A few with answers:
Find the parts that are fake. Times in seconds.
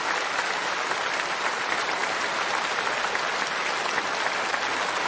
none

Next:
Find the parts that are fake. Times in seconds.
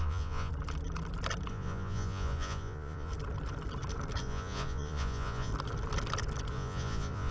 0.0-0.5 (vocoder, Vocos); 1.5-3.1; 4.2-5.5; 6.5-7.3